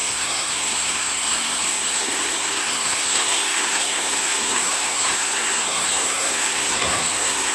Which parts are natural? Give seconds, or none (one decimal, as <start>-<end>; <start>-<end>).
none